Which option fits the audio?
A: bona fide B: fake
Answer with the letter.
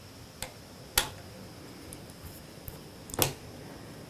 A